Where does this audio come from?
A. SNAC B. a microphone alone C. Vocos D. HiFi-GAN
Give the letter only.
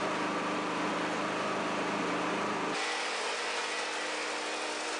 B